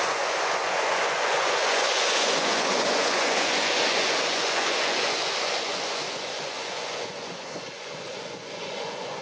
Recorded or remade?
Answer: remade